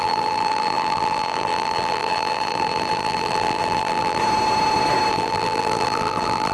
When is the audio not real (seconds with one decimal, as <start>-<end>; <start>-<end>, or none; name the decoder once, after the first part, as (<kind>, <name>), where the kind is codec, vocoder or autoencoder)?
0.0-4.2 (vocoder, BigVGAN v2); 5.1-6.5